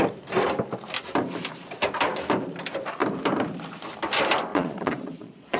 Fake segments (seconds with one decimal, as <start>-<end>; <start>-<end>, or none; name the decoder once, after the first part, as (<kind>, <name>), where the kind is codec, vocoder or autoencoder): 4.5-5.6 (vocoder, Vocos)